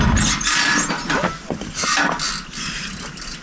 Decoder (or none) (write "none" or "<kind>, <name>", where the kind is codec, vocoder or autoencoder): none